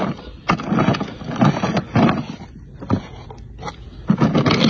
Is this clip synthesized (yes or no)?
no